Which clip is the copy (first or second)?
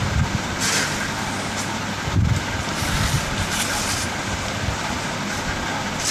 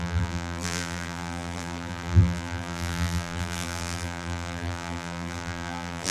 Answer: second